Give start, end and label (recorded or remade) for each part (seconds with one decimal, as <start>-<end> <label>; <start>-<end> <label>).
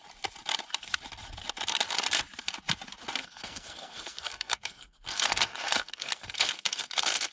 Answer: 0.0-3.2 recorded; 3.2-7.3 remade